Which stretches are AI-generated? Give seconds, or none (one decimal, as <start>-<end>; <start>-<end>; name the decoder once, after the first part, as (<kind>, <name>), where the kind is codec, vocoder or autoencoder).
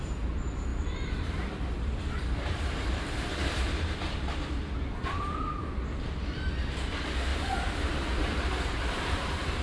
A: 0.7-5.8 (vocoder, BigVGAN v2); 7.3-8.5